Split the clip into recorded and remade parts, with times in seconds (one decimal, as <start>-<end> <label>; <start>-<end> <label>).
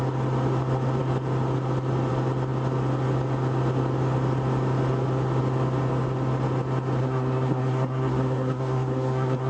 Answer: 0.0-7.0 recorded; 7.0-9.5 remade